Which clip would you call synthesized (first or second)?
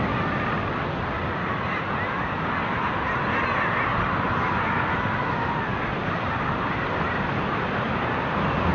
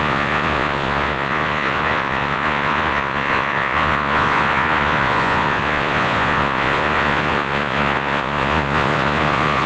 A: second